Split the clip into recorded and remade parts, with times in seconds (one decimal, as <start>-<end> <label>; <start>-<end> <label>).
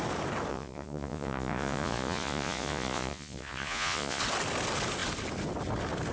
0.0-0.5 recorded; 0.5-4.2 remade; 4.2-6.1 recorded